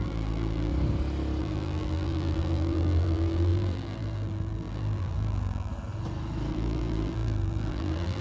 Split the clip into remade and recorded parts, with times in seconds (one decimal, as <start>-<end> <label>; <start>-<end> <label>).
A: 0.0-0.7 remade; 0.7-1.4 recorded; 1.4-5.7 remade; 5.7-6.5 recorded; 6.5-8.2 remade